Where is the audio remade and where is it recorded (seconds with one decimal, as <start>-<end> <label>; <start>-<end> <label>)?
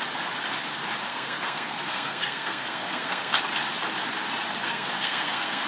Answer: 0.0-1.1 recorded; 1.1-3.4 remade; 3.4-4.6 recorded; 4.6-5.7 remade